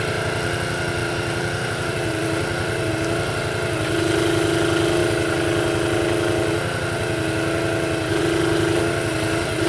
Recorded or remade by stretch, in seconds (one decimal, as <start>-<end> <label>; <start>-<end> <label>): 0.0-1.0 recorded; 1.0-2.9 remade; 2.9-9.7 recorded